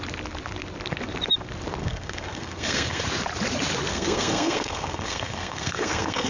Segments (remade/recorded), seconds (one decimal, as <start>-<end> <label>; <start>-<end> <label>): 0.0-1.8 recorded; 1.8-3.0 remade; 3.0-3.9 recorded; 3.9-6.3 remade